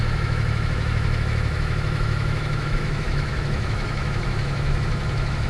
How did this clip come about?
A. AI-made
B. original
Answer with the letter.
A